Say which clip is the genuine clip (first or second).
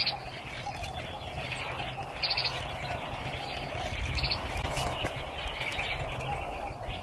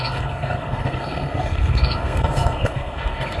first